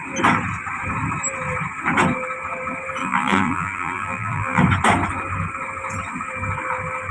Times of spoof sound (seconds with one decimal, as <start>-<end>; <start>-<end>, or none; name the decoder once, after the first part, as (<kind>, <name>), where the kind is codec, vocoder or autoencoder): 3.0-4.6 (vocoder, BigVGAN v2)